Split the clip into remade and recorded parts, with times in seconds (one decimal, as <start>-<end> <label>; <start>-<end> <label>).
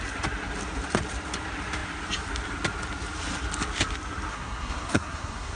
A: 0.0-4.3 recorded; 4.3-5.6 remade